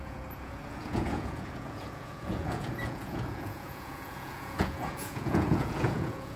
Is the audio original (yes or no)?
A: no